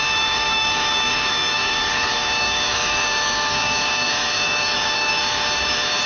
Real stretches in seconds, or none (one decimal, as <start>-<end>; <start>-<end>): none

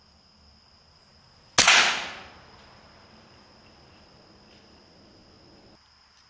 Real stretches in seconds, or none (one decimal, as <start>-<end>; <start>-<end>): 0.0-6.3

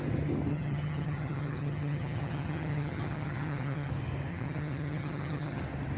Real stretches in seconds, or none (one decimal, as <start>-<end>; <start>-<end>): 0.0-0.5; 3.9-4.3; 5.6-6.0